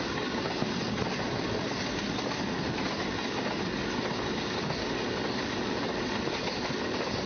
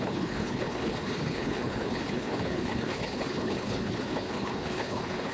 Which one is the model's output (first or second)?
second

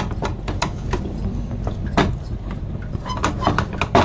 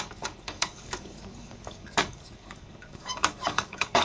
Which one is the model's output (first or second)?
second